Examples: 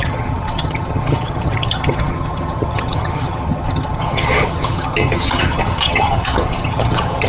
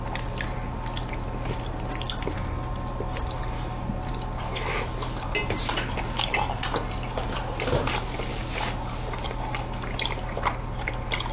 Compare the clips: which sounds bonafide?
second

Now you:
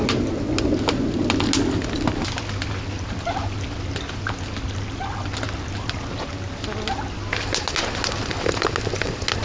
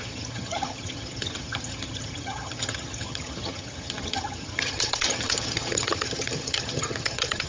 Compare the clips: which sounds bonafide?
first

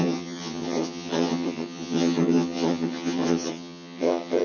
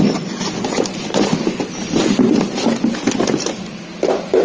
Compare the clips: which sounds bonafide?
second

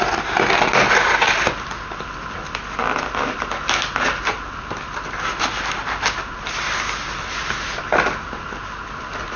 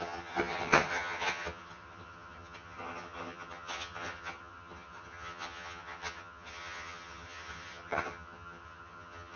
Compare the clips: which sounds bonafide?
first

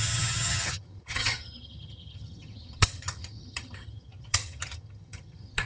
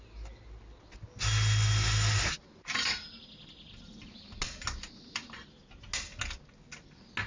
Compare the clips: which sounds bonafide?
second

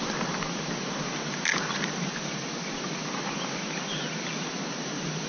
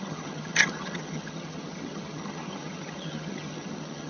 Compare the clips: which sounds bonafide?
first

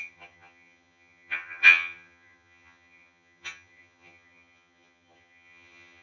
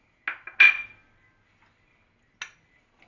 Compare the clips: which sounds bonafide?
second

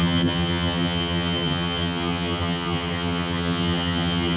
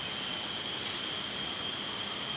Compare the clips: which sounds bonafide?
second